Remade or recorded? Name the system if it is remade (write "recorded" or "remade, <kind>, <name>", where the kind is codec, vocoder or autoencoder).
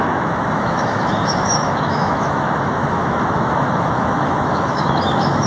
remade, autoencoder, DAC-VAE